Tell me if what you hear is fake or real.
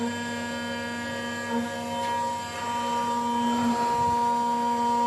real